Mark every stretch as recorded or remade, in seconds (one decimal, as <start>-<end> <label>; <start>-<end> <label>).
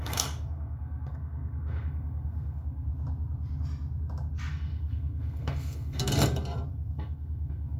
0.0-2.9 remade; 2.9-4.5 recorded; 4.5-6.1 remade; 6.1-6.7 recorded; 6.7-7.8 remade